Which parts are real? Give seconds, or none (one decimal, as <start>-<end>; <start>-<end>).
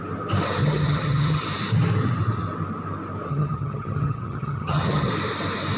0.0-0.6; 1.4-3.3; 5.1-5.8